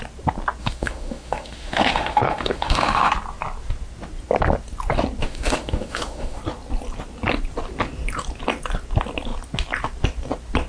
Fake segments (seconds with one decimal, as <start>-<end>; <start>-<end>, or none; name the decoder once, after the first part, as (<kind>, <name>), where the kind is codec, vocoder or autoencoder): 0.6-3.1 (autoencoder, DAC-VAE); 5.2-6.4